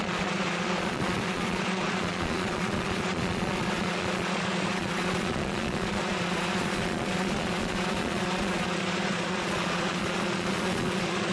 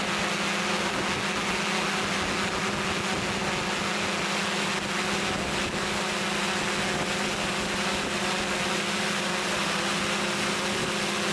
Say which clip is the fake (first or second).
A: first